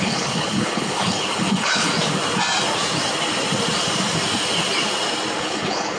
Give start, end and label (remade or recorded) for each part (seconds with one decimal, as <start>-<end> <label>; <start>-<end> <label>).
0.0-1.9 remade; 1.9-5.4 recorded; 5.4-6.0 remade